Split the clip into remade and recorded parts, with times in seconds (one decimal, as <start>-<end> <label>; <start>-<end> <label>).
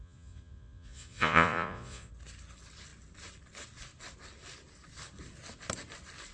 0.0-2.1 remade; 2.1-6.3 recorded